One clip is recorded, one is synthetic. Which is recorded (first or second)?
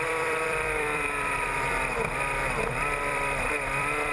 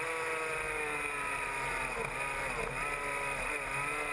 second